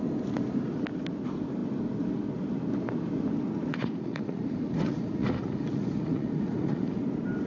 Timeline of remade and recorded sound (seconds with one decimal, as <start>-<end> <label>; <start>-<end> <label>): 0.0-3.7 recorded; 3.7-7.0 remade; 7.0-7.5 recorded